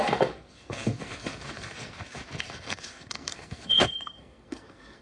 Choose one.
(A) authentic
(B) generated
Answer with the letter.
B